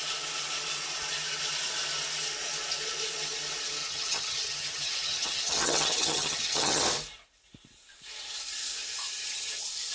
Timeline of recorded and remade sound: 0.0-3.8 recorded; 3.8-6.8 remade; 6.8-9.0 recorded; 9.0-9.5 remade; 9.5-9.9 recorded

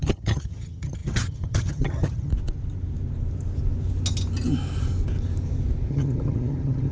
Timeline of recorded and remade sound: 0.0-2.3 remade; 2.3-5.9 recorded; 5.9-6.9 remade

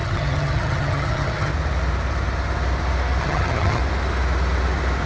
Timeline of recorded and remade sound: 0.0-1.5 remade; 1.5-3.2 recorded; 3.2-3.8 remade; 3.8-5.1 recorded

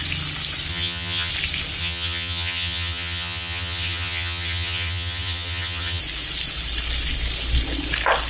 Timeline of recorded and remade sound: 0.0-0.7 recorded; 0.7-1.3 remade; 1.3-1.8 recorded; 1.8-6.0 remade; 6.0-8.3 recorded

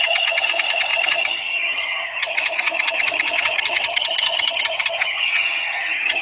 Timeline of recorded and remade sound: 0.0-6.2 remade